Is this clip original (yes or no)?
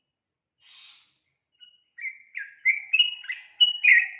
yes